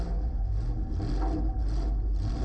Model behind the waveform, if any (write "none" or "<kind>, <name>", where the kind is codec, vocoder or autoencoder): none